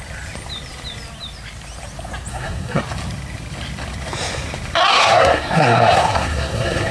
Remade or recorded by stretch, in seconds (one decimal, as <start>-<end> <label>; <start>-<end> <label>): 0.0-2.3 recorded; 2.3-2.8 remade; 2.8-4.9 recorded; 4.9-6.9 remade